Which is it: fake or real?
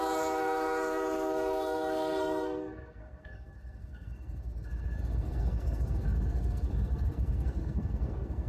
fake